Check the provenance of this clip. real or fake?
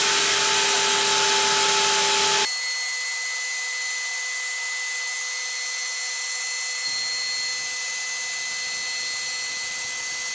real